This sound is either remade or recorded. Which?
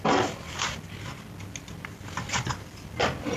recorded